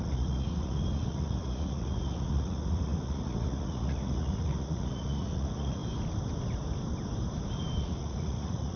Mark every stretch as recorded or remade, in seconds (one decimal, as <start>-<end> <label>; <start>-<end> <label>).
0.0-5.8 remade; 5.8-7.8 recorded; 7.8-8.8 remade